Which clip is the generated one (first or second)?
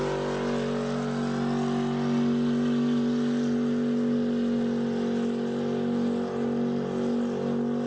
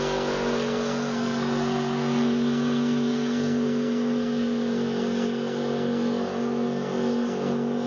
second